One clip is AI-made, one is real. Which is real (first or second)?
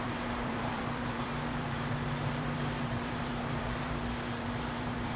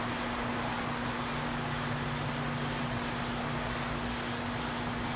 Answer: second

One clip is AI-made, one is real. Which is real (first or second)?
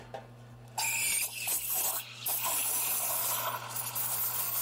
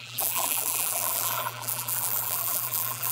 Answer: first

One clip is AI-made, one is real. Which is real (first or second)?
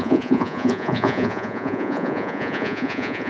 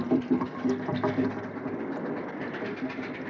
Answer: second